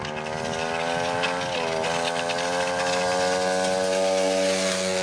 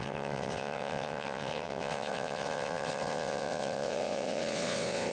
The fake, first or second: second